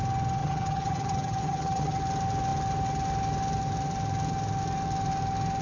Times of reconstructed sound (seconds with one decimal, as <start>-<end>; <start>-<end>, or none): 0.4-2.0

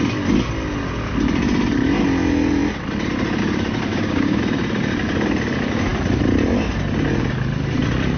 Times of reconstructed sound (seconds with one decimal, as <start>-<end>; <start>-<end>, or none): 3.9-4.4

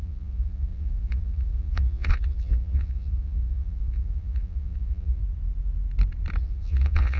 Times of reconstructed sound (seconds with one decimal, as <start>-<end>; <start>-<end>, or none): 0.0-5.2; 6.4-7.2

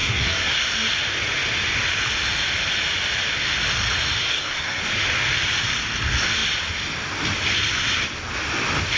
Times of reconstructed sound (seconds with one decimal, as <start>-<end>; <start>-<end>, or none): 0.0-0.5; 4.2-4.8

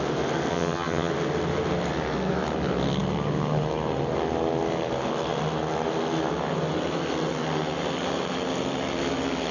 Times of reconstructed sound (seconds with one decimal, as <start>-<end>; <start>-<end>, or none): 0.5-1.1

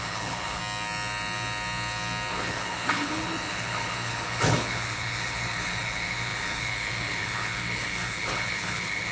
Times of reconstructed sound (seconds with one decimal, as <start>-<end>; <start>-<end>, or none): 0.0-0.6; 2.3-9.1